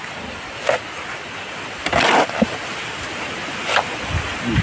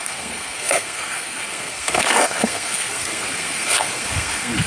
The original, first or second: first